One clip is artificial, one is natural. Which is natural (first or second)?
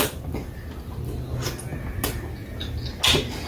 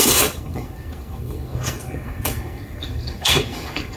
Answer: first